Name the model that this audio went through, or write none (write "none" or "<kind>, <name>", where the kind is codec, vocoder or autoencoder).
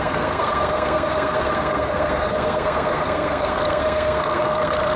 codec, SNAC